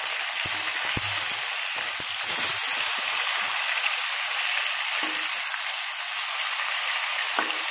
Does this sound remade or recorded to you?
recorded